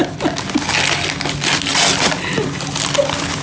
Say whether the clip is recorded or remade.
recorded